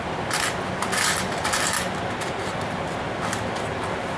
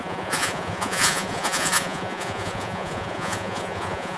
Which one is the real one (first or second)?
first